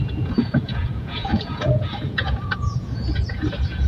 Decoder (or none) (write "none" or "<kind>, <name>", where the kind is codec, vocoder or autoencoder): vocoder, Vocos